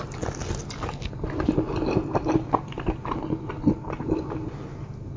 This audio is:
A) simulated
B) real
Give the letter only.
B